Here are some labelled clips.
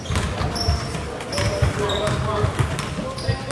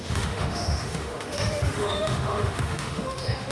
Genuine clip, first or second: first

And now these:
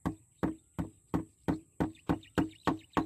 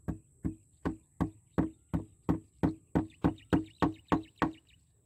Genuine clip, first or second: second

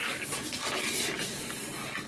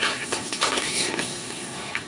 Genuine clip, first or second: first